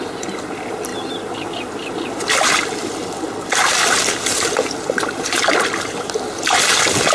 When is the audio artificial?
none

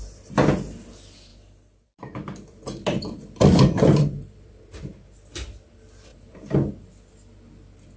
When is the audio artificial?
1.3-4.6; 6.1-6.7

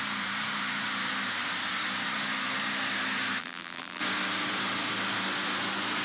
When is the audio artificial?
3.4-4.0